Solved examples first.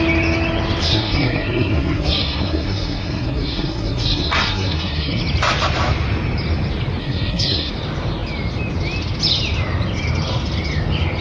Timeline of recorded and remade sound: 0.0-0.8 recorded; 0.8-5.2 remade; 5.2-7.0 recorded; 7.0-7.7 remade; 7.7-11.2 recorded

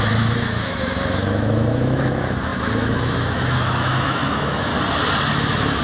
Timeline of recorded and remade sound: 0.0-4.7 remade; 4.7-5.3 recorded; 5.3-5.8 remade

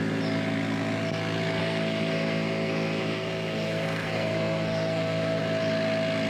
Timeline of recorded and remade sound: 0.0-1.6 recorded; 1.6-5.4 remade; 5.4-6.3 recorded

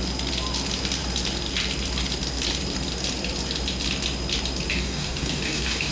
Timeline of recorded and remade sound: 0.0-4.7 recorded; 4.7-5.9 remade

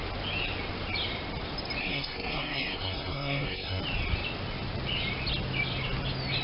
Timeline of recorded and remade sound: 0.0-1.8 recorded; 1.8-3.8 remade; 3.8-6.4 recorded

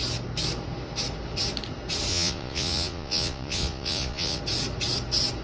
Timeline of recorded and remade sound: 0.0-2.1 recorded; 2.1-4.4 remade; 4.4-5.4 recorded

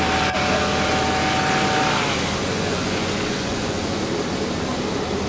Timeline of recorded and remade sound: 0.0-2.4 recorded; 2.4-4.0 remade; 4.0-5.3 recorded